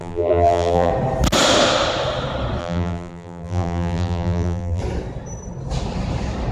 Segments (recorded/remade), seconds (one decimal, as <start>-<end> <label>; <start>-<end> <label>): 0.0-0.9 remade; 0.9-2.6 recorded; 2.6-4.8 remade; 4.8-6.5 recorded